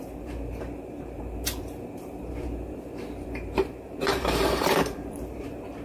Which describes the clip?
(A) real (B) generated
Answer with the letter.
B